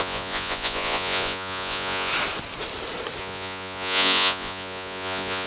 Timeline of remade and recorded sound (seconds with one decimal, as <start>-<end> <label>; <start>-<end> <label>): 0.0-2.1 remade; 2.1-3.2 recorded; 3.2-5.5 remade